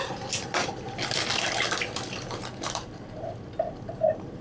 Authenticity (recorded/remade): remade